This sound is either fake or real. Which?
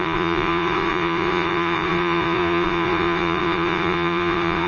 fake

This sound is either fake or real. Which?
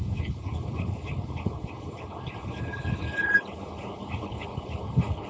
fake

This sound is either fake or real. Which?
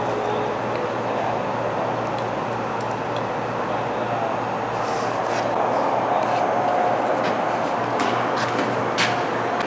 real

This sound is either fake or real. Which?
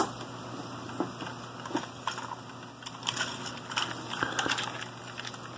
real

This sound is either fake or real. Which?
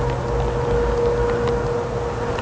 real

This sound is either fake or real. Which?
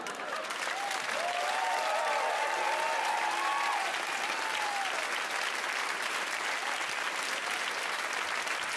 real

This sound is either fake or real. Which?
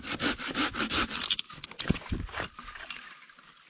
real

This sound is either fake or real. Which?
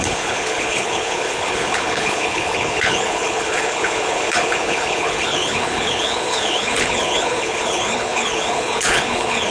fake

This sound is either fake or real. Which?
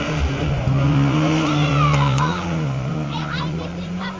fake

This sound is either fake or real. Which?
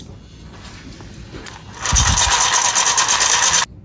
real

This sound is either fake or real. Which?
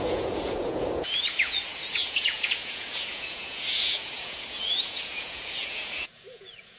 fake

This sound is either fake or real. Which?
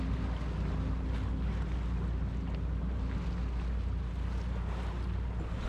real